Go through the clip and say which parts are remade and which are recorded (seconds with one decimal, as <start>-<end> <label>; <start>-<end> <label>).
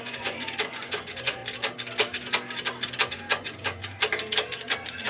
0.0-1.4 remade; 1.4-3.1 recorded; 3.1-3.8 remade; 3.8-5.1 recorded